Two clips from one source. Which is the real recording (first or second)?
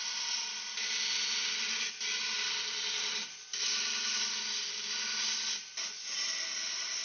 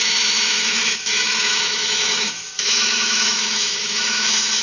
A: first